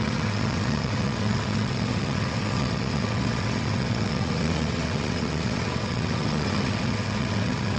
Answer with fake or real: fake